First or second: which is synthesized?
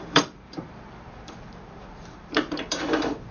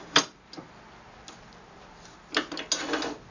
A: first